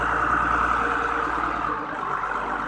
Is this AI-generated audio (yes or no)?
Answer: no